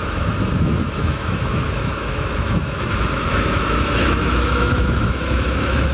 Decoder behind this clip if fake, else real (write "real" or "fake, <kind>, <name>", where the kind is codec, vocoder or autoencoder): fake, autoencoder, DAC-VAE